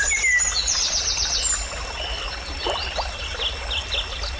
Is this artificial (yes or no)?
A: no